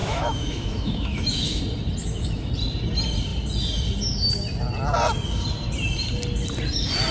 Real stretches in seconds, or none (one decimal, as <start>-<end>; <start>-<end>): 1.6-2.0; 2.5-7.1

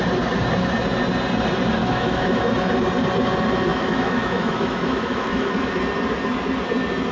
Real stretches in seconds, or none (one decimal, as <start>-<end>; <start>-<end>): 0.0-1.8; 2.4-3.7; 5.8-7.1

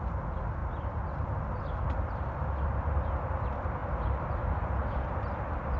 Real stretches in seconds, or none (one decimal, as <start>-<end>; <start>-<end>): 0.0-5.8

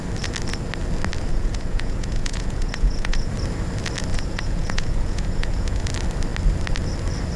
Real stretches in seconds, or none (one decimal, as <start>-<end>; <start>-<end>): 0.0-1.3; 3.3-4.1; 5.8-7.4

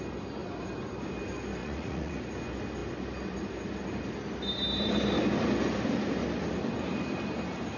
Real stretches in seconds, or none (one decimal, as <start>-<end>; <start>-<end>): 0.0-1.6; 2.2-7.8